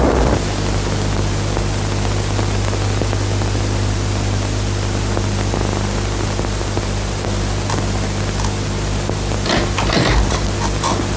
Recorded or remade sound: recorded